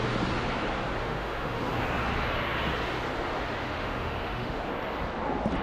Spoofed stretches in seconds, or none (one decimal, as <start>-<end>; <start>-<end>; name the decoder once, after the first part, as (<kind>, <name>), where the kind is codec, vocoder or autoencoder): 1.0-1.6 (autoencoder, DAC-VAE); 3.6-4.6

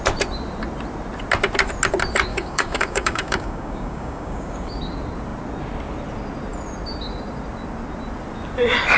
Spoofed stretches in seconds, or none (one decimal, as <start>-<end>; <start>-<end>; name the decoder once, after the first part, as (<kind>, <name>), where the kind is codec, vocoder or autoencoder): 2.3-4.8 (codec, DAC)

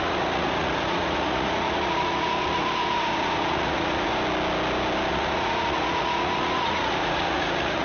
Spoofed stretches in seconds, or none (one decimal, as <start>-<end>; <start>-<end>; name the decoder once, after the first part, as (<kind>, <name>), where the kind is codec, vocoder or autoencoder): 0.0-4.1 (vocoder, Vocos); 5.1-7.8

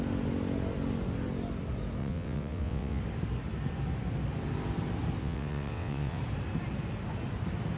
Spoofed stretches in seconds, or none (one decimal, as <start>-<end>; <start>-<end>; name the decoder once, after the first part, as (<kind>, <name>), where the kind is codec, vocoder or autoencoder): 2.0-3.0 (vocoder, WaveNeXt); 5.2-6.2